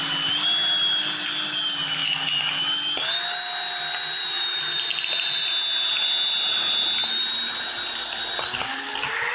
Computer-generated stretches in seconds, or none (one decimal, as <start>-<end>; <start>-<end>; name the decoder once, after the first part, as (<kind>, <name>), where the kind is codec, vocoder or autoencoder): none